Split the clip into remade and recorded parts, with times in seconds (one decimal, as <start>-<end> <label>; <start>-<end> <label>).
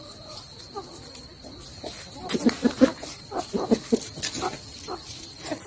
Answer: 0.0-5.7 recorded